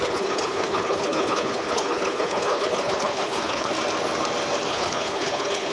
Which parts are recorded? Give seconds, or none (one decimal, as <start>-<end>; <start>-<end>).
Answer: 3.7-4.7